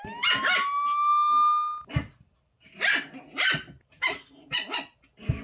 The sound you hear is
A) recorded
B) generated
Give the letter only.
A